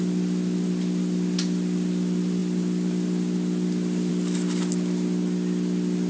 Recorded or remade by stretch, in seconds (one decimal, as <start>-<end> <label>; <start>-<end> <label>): 0.0-6.1 recorded